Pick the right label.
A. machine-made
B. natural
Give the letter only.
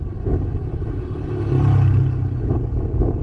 B